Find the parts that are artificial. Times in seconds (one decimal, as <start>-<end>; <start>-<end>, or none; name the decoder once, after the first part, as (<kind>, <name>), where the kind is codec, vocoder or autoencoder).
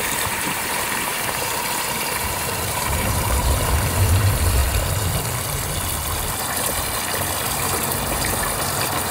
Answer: 0.0-4.6 (vocoder, BigVGAN v2)